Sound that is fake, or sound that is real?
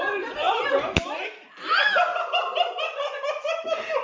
real